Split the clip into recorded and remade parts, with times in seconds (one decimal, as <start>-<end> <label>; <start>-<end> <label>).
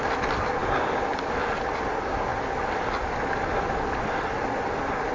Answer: 0.0-5.1 recorded